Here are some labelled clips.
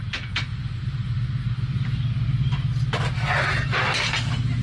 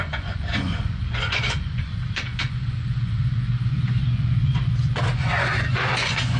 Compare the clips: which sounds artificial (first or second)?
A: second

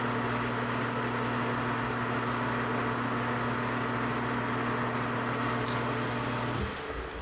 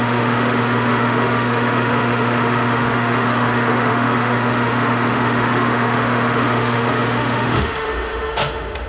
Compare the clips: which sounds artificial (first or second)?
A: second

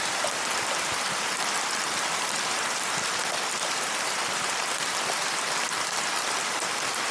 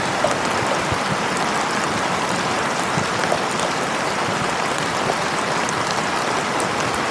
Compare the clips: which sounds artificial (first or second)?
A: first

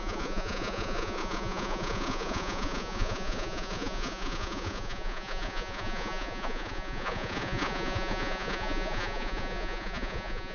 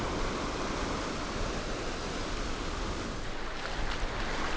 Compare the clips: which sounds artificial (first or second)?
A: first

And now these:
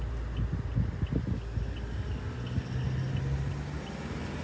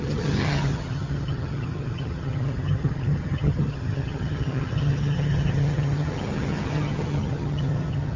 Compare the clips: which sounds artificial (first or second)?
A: second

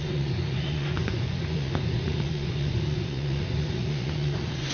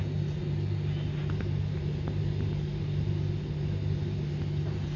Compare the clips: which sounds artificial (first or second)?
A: first